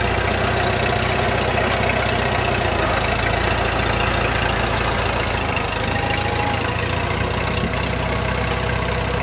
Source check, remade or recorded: recorded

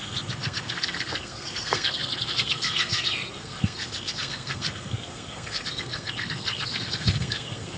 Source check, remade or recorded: remade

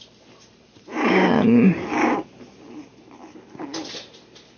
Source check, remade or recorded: recorded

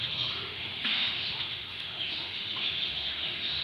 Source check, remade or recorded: remade